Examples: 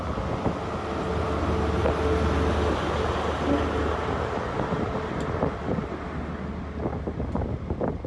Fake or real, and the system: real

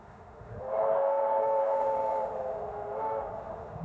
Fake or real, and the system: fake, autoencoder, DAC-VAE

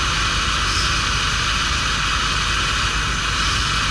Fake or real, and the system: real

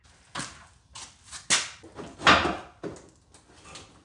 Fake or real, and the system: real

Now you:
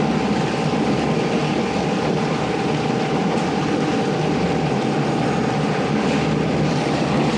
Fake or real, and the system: real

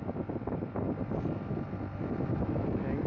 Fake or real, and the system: real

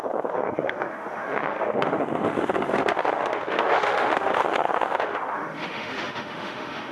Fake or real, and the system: fake, autoencoder, DAC-VAE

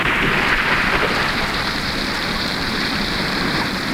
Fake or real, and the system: fake, vocoder, BigVGAN v2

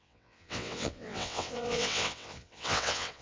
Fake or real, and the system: fake, vocoder, WaveNeXt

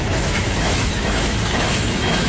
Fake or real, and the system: fake, autoencoder, DAC-VAE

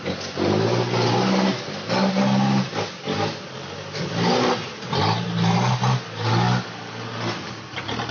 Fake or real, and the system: real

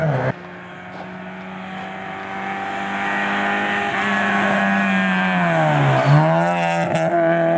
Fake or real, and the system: real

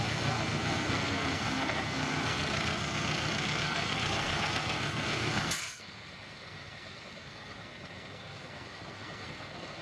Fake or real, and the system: fake, codec, SNAC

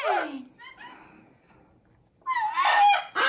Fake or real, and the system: real